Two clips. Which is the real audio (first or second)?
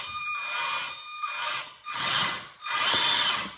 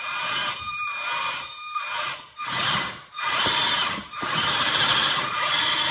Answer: first